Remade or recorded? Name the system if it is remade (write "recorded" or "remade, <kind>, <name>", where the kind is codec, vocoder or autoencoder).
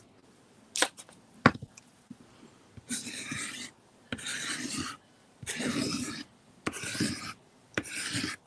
recorded